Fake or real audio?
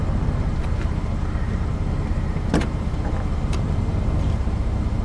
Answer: fake